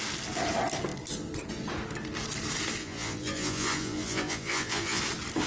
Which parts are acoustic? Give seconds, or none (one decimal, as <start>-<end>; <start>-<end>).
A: 0.0-2.8; 5.0-5.5